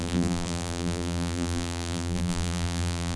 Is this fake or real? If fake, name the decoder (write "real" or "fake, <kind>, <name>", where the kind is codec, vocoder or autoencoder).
fake, vocoder, BigVGAN v2